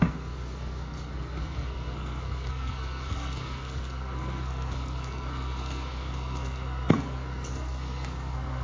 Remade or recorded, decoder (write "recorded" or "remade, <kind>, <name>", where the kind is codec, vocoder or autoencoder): remade, codec, SNAC